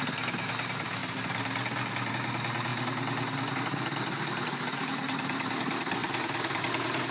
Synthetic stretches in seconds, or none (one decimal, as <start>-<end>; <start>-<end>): none